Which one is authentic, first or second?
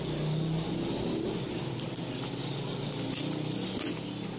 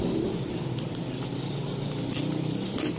first